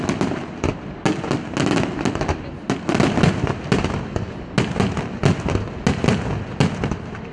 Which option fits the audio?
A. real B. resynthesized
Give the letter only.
A